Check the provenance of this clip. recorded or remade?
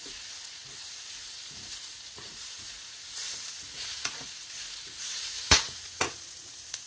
remade